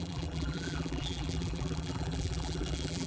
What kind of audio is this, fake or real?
fake